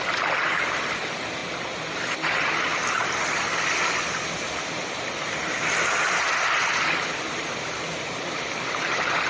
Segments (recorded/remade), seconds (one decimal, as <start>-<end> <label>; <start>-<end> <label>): 0.0-1.4 remade; 1.4-1.9 recorded; 1.9-9.3 remade